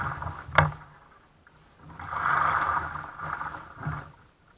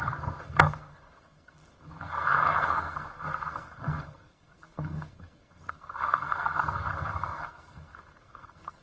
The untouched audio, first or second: first